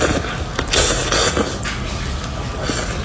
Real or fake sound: real